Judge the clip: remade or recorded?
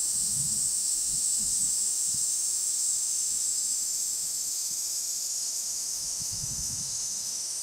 remade